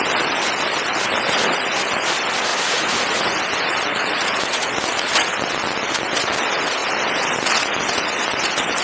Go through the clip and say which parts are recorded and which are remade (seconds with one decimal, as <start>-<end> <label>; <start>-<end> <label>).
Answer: 0.0-2.5 recorded; 2.5-3.4 remade; 3.4-3.9 recorded; 3.9-5.1 remade; 5.1-8.8 recorded